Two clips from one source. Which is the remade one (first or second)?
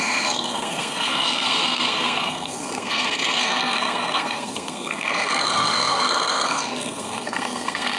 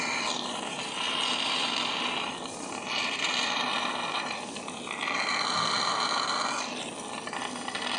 first